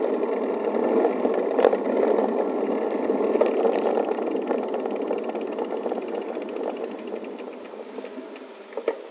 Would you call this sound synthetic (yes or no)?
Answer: no